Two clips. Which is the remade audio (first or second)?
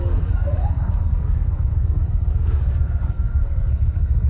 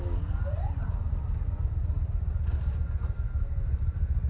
first